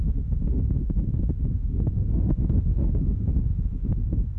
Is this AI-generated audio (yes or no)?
yes